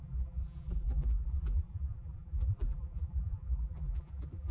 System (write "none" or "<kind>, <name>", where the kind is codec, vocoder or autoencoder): vocoder, BigVGAN v2